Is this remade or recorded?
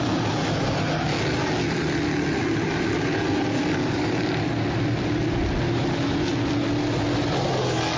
recorded